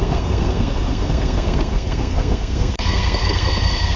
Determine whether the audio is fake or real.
fake